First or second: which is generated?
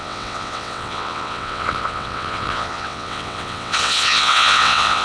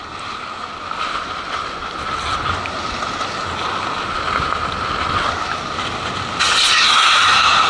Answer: first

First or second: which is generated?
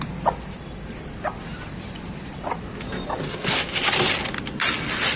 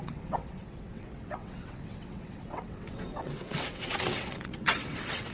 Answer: second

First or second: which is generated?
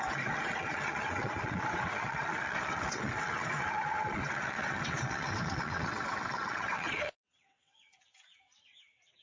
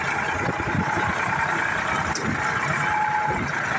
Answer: first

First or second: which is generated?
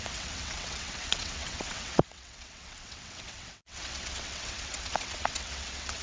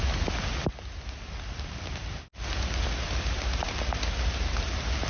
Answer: first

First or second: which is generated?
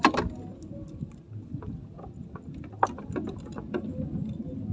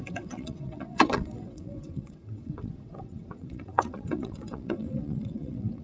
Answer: second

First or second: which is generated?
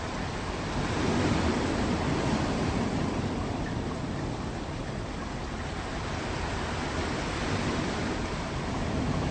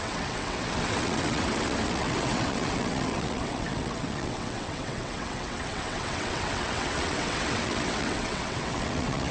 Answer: second